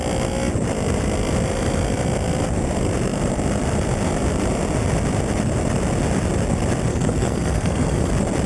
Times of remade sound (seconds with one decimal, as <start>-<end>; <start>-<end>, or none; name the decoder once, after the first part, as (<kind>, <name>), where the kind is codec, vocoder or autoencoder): 6.9-8.1 (codec, SNAC)